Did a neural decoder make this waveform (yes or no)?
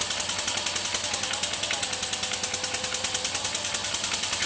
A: no